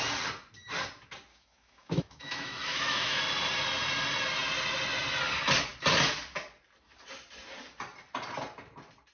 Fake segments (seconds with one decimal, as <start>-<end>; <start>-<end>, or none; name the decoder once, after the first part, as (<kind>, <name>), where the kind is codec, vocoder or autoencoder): 1.3-3.2 (autoencoder, DAC-VAE)